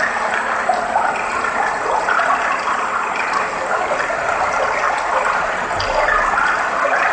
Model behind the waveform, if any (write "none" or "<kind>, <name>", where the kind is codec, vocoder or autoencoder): none